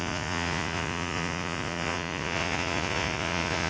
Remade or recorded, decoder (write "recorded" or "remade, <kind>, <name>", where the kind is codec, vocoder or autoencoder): remade, vocoder, Vocos